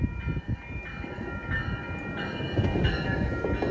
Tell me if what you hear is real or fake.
real